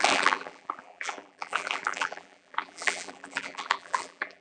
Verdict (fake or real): fake